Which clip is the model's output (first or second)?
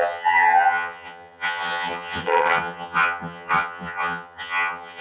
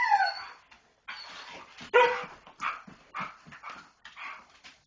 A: first